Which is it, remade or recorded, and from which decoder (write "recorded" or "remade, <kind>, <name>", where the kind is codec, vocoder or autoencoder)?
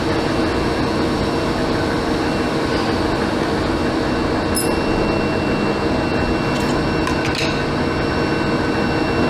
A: recorded